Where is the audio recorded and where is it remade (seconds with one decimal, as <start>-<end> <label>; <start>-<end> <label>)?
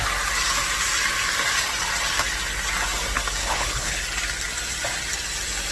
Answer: 0.0-3.4 recorded; 3.4-4.0 remade; 4.0-5.7 recorded